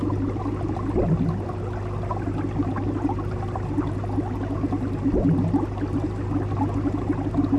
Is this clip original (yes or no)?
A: yes